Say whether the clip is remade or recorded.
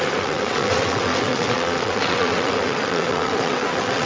remade